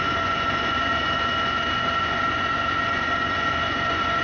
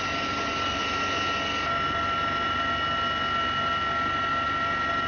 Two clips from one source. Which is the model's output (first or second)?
first